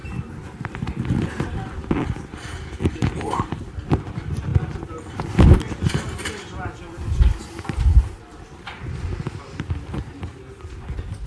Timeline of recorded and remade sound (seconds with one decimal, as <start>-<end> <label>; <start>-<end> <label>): 0.0-11.3 recorded